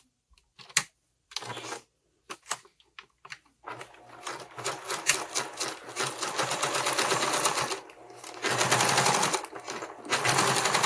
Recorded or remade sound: recorded